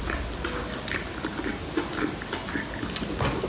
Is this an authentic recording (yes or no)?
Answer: yes